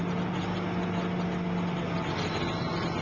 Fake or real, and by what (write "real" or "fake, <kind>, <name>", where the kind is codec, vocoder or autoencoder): real